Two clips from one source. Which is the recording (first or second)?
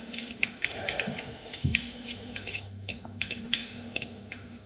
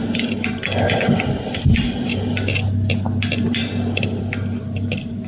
second